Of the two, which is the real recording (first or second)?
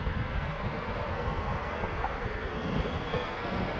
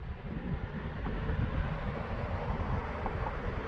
second